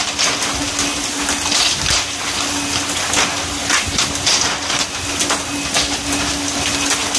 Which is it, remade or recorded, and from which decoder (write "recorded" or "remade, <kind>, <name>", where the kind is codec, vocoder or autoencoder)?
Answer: recorded